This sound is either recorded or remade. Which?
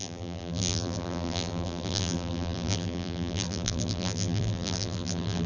remade